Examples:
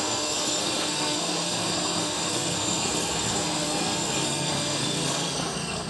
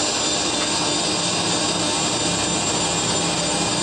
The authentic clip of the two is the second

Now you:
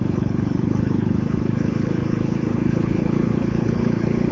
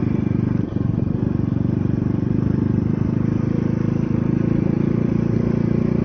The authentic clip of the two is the second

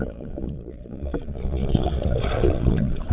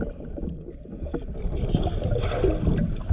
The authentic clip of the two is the second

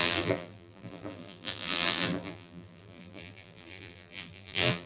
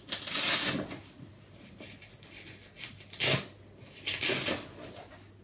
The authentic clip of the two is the second